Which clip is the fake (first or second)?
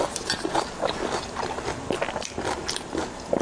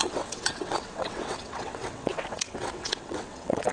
second